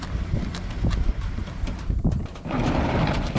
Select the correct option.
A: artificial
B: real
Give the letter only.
B